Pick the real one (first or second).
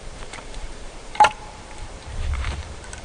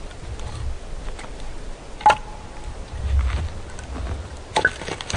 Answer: second